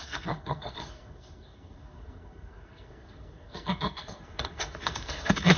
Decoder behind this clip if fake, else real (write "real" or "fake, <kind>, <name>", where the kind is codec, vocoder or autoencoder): fake, codec, SNAC